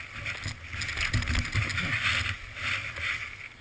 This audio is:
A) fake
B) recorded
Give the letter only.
B